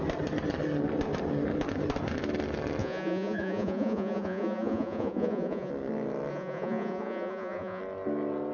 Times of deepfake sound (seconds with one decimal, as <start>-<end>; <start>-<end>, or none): 2.8-5.7; 6.3-7.8